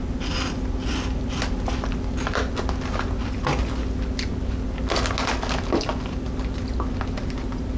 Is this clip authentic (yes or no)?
yes